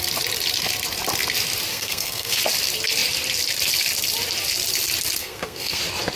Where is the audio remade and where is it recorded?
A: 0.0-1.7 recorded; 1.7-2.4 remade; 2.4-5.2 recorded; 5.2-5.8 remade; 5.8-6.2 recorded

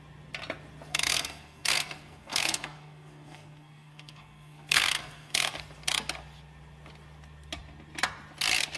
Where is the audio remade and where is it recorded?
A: 0.0-0.9 recorded; 0.9-5.6 remade; 5.6-8.8 recorded

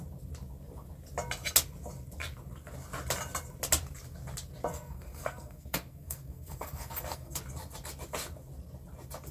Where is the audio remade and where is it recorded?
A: 0.0-4.7 recorded; 4.7-7.4 remade; 7.4-9.3 recorded

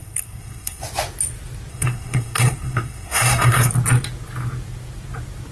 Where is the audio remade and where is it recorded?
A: 0.0-0.8 remade; 0.8-1.7 recorded; 1.7-3.7 remade; 3.7-5.5 recorded

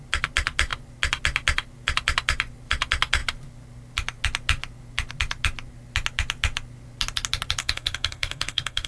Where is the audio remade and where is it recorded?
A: 0.0-7.6 recorded; 7.6-8.9 remade

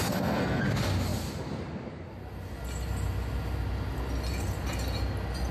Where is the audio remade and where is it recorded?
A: 0.0-0.6 remade; 0.6-5.5 recorded